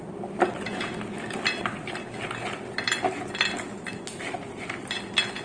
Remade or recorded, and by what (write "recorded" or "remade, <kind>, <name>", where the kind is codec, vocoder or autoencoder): recorded